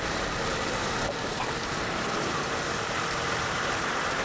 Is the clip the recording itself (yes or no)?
no